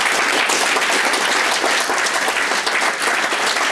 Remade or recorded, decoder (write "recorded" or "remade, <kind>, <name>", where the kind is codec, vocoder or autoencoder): recorded